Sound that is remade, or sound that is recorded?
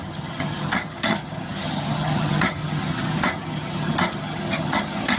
remade